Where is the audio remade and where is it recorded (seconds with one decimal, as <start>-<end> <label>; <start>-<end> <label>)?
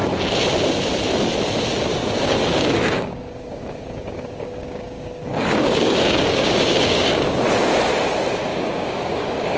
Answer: 0.0-1.9 recorded; 1.9-7.1 remade; 7.1-8.5 recorded; 8.5-9.6 remade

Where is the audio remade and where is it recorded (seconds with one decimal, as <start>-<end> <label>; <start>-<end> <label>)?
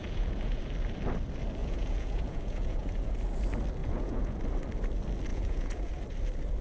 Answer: 0.0-0.6 remade; 0.6-1.6 recorded; 1.6-3.1 remade; 3.1-3.8 recorded; 3.8-4.4 remade; 4.4-5.3 recorded; 5.3-5.9 remade; 5.9-6.6 recorded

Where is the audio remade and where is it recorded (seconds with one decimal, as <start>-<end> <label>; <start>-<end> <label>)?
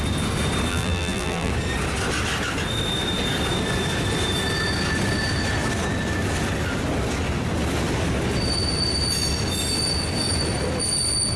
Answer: 0.0-0.7 recorded; 0.7-1.5 remade; 1.5-11.4 recorded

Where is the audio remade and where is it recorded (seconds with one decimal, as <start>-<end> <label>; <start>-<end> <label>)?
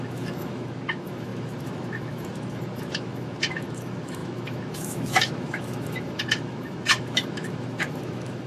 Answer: 0.0-8.5 remade